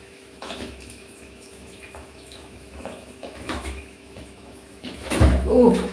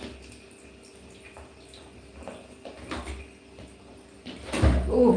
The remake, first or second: first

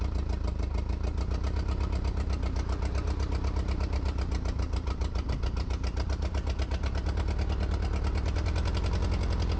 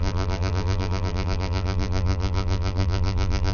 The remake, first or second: second